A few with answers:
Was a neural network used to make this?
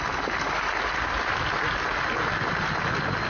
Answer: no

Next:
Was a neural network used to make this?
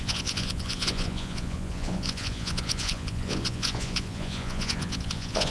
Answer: yes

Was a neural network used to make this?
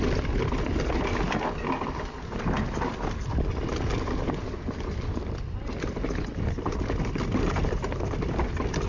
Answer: no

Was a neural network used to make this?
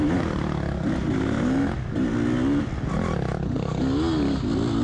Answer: no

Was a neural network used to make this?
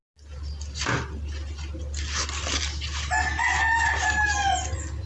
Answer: no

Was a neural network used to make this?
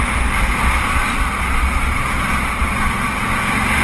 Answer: no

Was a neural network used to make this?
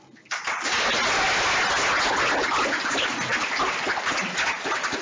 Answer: no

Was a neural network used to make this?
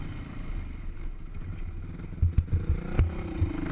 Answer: no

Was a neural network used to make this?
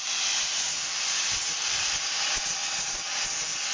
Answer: no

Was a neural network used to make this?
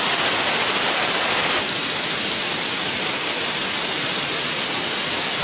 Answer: no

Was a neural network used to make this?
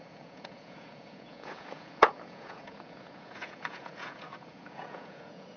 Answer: yes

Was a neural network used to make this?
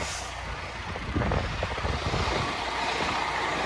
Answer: no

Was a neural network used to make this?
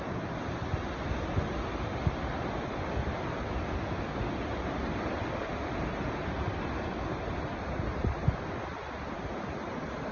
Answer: no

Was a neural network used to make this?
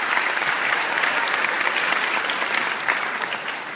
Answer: no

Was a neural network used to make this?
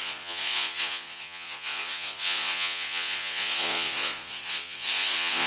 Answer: yes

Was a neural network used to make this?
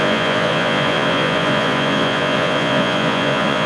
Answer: yes